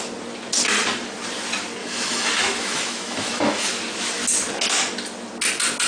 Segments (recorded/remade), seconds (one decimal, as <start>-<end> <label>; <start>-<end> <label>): 0.0-1.8 recorded; 1.8-3.7 remade; 3.7-5.9 recorded